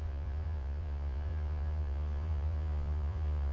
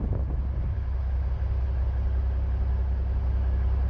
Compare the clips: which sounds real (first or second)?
second